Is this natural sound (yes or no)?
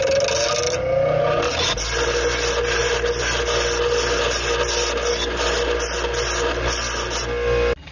yes